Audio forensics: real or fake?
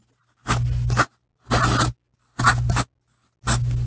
real